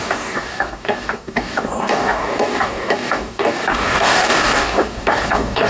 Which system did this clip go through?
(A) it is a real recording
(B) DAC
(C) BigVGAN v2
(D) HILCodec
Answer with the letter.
B